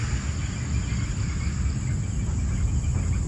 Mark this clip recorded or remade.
recorded